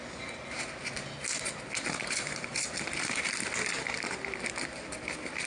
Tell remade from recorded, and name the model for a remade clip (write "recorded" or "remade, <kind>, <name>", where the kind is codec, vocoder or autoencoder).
recorded